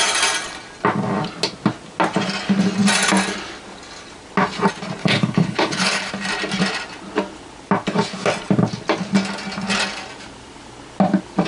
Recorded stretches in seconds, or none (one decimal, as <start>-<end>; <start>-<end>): 0.0-5.0; 6.1-11.5